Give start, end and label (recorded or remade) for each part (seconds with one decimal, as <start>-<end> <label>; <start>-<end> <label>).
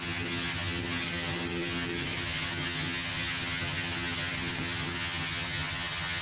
0.0-6.2 remade